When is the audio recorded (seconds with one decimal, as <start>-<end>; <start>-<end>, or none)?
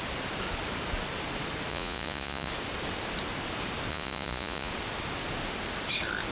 0.0-1.7; 2.5-3.9; 4.7-6.3